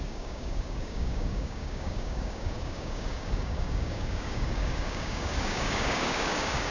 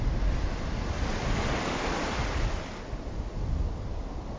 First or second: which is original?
second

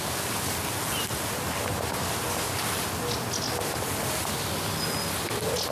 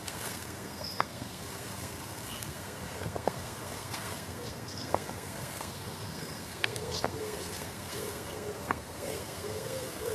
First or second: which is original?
first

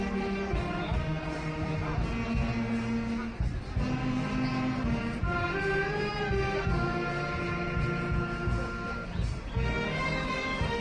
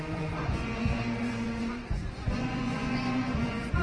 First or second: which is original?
first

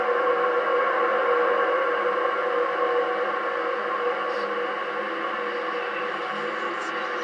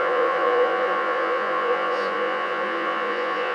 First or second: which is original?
first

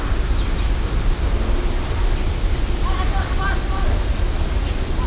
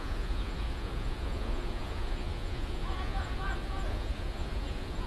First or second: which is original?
first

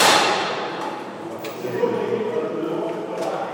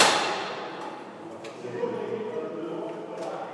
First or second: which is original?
second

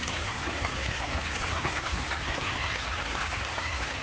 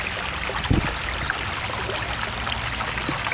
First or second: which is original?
second